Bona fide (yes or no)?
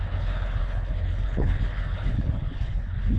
no